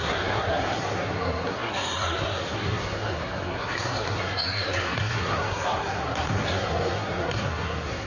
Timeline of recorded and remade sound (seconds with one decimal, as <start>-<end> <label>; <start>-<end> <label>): 0.0-8.1 remade